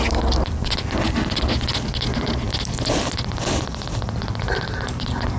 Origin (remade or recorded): recorded